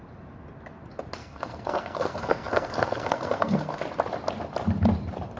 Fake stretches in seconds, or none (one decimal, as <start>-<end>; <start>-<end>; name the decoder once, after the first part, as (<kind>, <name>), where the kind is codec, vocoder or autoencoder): 1.2-3.8 (codec, SNAC)